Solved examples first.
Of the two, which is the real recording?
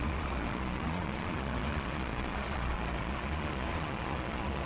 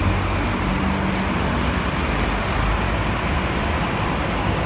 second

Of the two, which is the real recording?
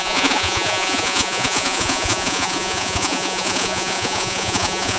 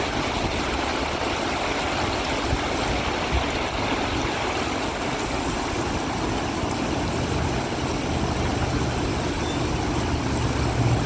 second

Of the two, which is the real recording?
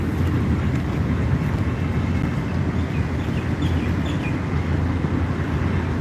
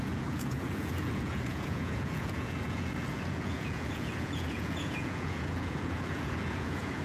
first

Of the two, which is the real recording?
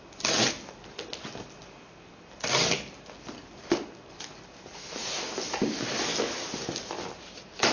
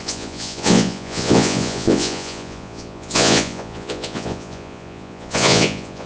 first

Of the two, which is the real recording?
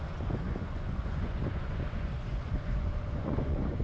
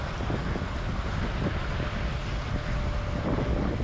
second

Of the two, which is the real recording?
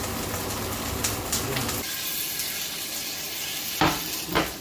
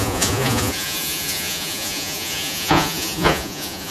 first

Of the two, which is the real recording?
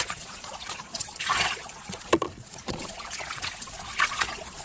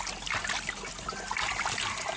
second